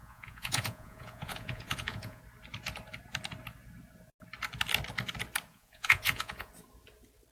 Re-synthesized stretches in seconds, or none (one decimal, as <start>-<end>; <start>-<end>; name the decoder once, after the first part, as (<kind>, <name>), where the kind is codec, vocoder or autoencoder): 0.0-2.2 (vocoder, Vocos); 5.5-6.5